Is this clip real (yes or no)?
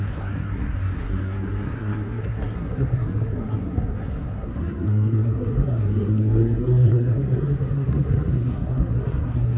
no